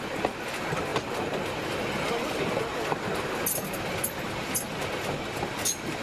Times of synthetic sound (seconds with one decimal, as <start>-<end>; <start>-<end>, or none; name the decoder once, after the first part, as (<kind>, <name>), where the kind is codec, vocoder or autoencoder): none